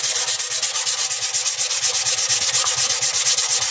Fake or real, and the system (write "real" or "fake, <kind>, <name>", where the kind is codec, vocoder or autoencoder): real